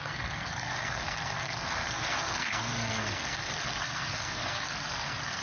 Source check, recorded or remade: remade